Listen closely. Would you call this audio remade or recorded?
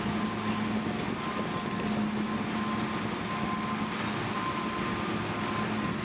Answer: recorded